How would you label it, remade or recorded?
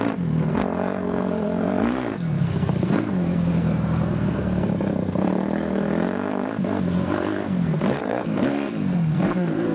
remade